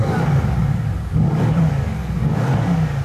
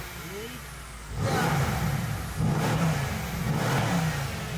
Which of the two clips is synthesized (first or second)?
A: first